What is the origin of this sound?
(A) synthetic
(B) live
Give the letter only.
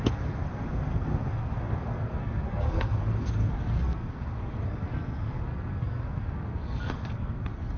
A